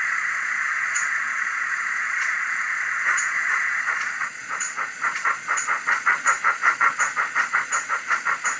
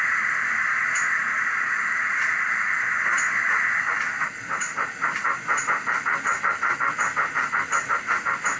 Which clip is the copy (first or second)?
first